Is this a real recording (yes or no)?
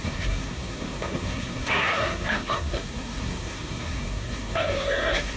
no